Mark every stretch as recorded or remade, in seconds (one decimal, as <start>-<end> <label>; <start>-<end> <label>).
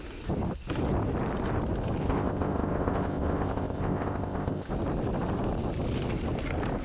0.0-2.0 recorded; 2.0-4.7 remade; 4.7-6.8 recorded